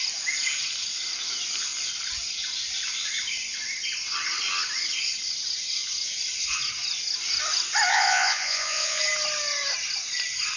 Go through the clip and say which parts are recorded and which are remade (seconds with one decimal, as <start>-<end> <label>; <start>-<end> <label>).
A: 0.0-7.9 recorded; 7.9-9.0 remade; 9.0-10.6 recorded